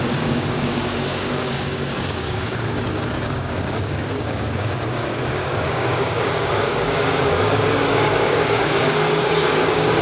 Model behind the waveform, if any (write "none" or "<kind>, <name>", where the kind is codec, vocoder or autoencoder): codec, DAC